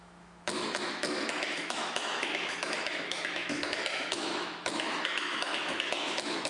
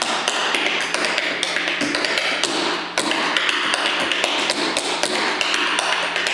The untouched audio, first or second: second